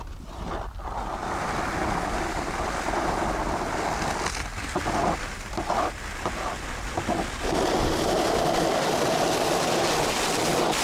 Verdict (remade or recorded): recorded